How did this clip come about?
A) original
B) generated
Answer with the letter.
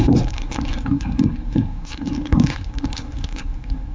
B